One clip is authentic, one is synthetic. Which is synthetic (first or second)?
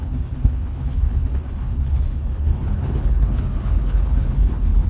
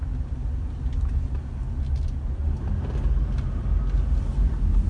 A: first